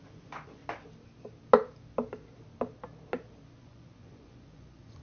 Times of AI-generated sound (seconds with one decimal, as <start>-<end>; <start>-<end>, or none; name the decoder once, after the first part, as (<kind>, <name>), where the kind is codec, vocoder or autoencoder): 0.0-0.6 (vocoder, Vocos); 3.6-5.0